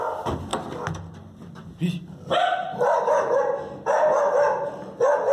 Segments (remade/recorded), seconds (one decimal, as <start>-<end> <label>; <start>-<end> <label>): 0.0-5.3 recorded